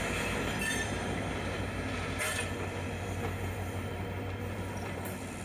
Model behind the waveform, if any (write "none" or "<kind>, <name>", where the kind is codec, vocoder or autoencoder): none